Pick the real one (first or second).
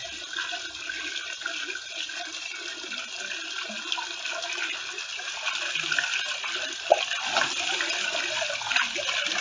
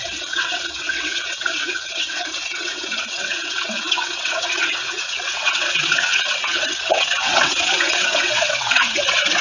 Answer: first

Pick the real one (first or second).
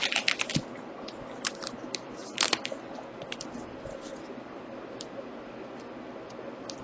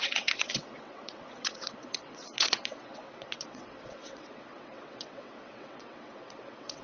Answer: first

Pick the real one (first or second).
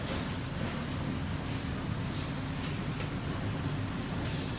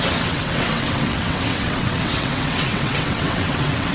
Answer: first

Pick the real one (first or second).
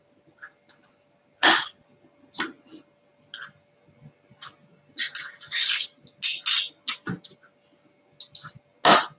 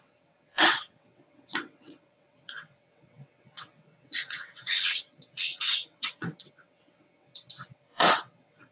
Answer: first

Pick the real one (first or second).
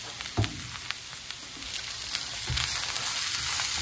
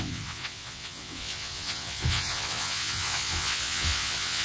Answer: first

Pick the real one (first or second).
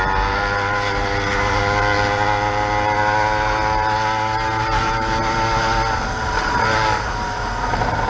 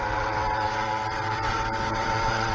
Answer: first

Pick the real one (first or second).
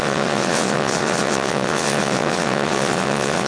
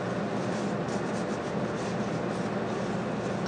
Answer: second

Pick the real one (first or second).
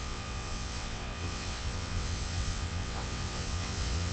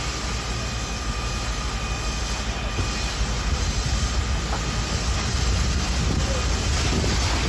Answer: second